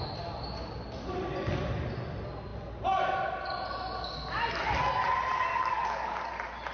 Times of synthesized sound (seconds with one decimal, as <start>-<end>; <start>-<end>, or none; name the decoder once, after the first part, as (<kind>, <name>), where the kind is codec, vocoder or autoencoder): 5.5-6.3 (codec, DAC)